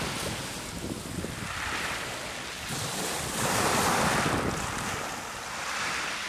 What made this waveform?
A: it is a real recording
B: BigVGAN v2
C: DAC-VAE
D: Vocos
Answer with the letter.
A